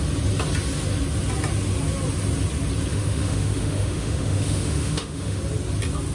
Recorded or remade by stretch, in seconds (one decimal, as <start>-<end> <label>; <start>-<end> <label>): 0.0-2.9 recorded; 2.9-5.4 remade; 5.4-6.1 recorded